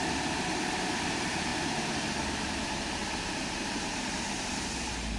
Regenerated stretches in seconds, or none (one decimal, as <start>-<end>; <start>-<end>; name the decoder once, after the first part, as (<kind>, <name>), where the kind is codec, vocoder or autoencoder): 0.0-5.2 (vocoder, BigVGAN v2)